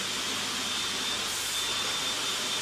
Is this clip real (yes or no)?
yes